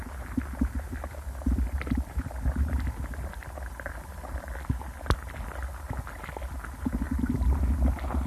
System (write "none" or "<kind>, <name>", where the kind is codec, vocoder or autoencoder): none